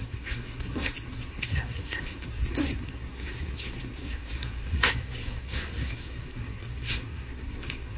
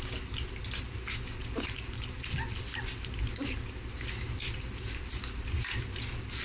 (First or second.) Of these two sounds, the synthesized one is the first